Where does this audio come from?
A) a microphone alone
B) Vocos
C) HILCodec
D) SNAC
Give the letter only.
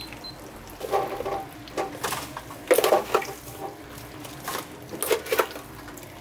A